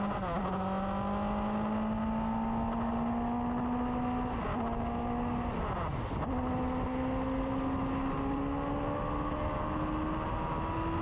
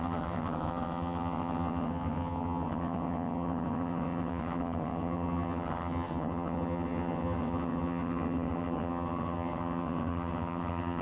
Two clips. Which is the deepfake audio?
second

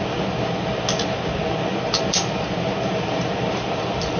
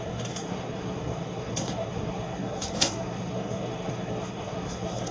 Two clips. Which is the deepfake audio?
second